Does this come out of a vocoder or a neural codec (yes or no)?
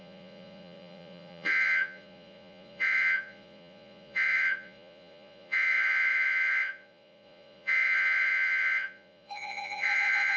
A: yes